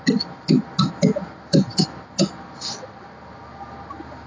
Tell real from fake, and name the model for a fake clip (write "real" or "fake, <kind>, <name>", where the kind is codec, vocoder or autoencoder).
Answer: real